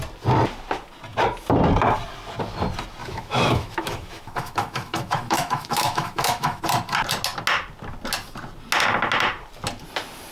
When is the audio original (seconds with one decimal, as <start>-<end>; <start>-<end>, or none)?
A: 0.0-3.0; 6.6-10.3